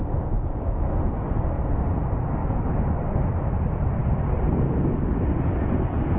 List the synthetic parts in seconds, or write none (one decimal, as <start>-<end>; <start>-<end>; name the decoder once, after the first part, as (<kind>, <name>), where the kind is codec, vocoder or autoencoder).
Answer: 2.4-3.3 (vocoder, BigVGAN v2)